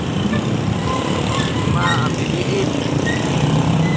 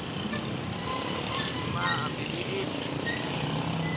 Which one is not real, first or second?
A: first